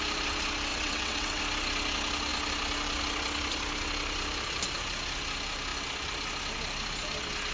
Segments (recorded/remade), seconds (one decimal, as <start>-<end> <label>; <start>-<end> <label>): 0.0-0.7 recorded; 0.7-1.4 remade; 1.4-7.5 recorded